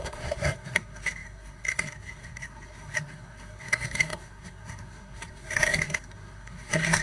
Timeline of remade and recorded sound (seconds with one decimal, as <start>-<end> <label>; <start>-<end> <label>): 0.0-7.0 remade